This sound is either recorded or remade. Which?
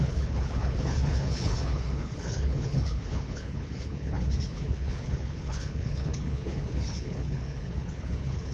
remade